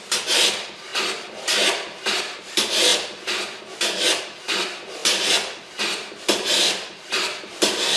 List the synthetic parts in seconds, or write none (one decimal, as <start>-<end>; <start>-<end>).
0.0-2.9; 4.2-5.0; 6.2-8.0